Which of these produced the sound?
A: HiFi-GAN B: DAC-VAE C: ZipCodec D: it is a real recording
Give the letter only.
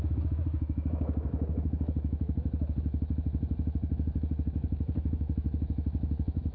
B